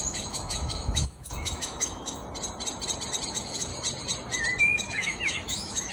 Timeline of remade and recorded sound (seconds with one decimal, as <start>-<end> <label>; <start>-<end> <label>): 0.0-2.2 remade; 2.2-3.3 recorded; 3.3-3.7 remade; 3.7-4.6 recorded; 4.6-5.9 remade